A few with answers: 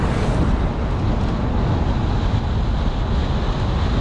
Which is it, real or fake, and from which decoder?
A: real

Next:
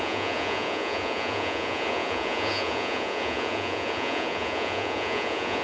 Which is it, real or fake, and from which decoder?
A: fake, vocoder, Vocos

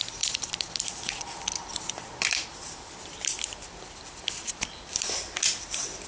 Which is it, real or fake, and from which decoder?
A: fake, vocoder, BigVGAN v2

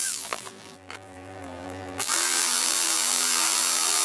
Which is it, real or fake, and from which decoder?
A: fake, vocoder, BigVGAN v2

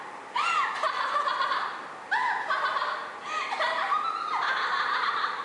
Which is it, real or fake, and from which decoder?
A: real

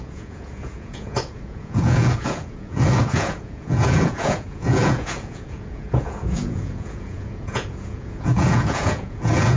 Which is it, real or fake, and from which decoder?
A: fake, vocoder, Vocos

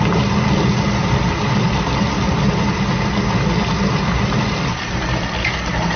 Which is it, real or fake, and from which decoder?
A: real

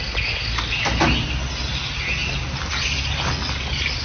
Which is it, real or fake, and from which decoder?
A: real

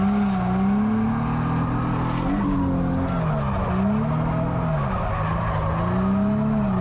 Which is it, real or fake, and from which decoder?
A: real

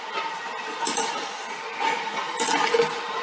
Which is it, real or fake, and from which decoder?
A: real